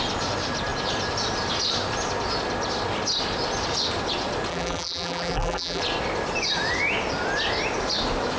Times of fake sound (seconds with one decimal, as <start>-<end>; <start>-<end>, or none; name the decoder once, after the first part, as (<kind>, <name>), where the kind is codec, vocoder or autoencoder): 4.5-5.8 (vocoder, BigVGAN v2)